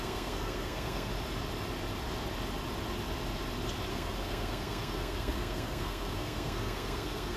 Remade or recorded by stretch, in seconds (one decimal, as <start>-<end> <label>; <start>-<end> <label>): 0.0-1.1 remade; 1.1-3.9 recorded; 3.9-7.4 remade